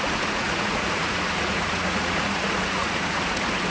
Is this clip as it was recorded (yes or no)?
no